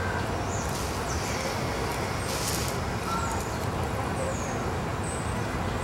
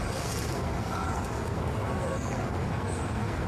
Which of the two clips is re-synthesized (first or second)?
second